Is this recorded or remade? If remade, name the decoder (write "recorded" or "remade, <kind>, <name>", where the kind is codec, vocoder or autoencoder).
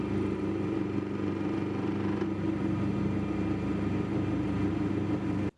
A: recorded